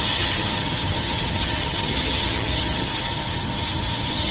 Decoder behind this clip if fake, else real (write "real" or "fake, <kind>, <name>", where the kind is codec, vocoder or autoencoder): fake, vocoder, HiFi-GAN